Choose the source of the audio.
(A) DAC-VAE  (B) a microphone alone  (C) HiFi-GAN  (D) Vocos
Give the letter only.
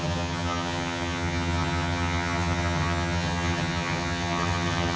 C